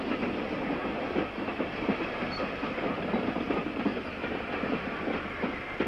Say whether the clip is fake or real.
fake